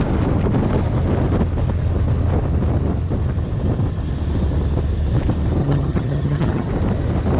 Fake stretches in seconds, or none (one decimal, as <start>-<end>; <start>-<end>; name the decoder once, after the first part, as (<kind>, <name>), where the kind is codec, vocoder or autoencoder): 5.6-6.7 (vocoder, HiFi-GAN)